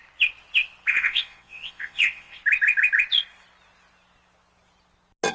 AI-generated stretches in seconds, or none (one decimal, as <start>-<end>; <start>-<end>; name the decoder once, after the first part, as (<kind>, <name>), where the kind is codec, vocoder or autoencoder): 0.9-2.4 (vocoder, WaveNeXt)